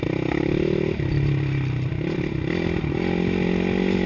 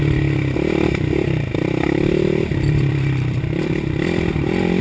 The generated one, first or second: second